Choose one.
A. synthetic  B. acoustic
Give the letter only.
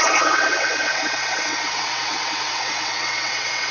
A